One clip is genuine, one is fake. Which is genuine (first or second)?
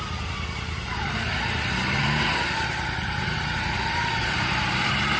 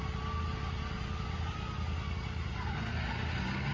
second